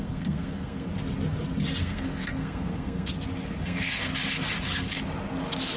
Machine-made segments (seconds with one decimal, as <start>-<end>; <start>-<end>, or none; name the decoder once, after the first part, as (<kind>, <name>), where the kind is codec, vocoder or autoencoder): 0.0-0.9 (codec, SNAC); 1.8-3.1; 3.6-4.1